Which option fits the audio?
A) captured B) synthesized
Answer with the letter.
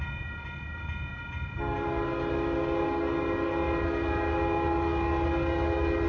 A